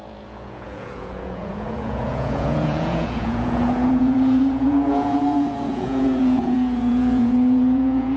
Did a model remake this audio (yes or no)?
yes